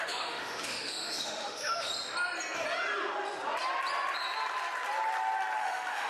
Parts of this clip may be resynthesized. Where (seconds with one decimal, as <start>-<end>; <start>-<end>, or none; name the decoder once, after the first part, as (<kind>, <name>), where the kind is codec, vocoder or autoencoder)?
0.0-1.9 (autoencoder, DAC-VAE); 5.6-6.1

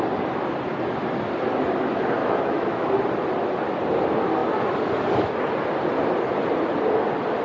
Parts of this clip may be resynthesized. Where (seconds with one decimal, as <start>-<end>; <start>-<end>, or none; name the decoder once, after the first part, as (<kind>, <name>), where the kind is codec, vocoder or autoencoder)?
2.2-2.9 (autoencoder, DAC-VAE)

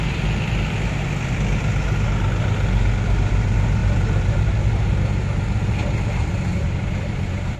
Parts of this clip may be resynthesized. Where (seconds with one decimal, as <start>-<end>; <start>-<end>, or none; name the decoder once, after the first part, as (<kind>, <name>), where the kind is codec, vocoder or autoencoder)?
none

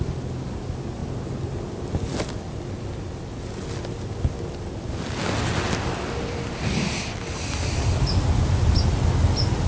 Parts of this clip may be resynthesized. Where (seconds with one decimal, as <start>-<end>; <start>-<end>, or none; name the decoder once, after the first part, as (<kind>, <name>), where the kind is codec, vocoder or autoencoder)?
none

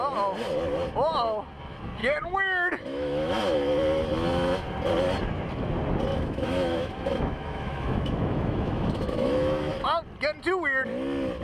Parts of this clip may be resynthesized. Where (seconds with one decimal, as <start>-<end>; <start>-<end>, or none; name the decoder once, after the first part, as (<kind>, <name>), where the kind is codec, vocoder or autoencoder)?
2.0-3.4 (autoencoder, DAC-VAE); 6.1-9.7